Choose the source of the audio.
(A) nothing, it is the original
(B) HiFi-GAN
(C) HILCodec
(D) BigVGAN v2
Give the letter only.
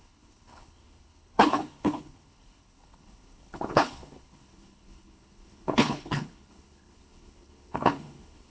C